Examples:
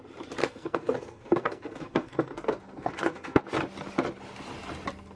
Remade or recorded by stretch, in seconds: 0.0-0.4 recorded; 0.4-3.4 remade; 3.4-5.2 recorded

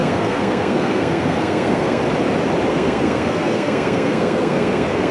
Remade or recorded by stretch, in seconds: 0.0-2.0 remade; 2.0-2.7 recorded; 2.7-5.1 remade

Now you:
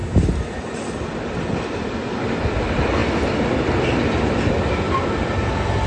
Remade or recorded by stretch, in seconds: 0.0-5.9 recorded